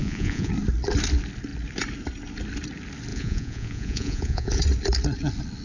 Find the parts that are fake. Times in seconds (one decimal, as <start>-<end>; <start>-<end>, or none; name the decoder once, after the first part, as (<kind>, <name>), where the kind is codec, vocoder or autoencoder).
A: 0.0-0.5 (vocoder, Vocos); 3.1-4.6